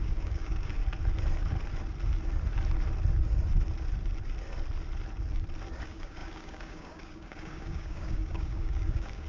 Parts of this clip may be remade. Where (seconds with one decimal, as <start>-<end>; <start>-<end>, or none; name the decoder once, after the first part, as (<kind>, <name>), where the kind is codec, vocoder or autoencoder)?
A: 0.0-0.8 (codec, DAC); 5.8-9.3